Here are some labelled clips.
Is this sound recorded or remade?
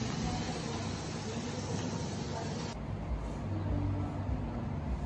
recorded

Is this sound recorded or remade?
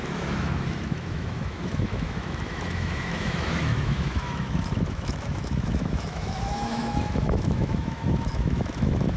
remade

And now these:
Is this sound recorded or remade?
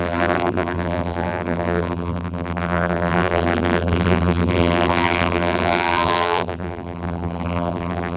remade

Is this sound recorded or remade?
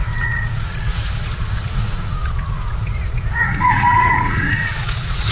remade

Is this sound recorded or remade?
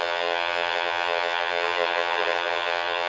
remade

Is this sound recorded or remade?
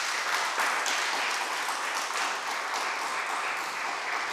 recorded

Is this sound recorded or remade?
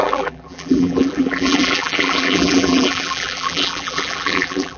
remade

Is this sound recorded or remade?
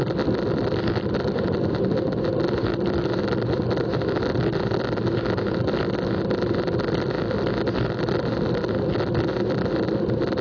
recorded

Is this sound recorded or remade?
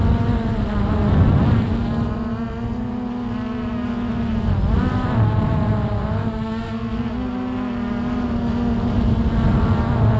recorded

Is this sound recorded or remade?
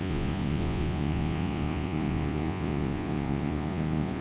remade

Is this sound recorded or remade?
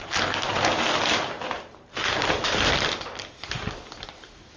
recorded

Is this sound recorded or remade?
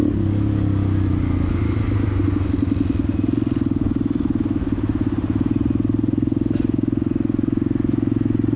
recorded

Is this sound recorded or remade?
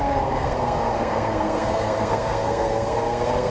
remade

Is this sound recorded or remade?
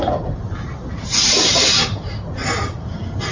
recorded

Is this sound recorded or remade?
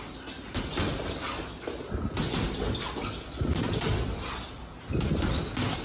recorded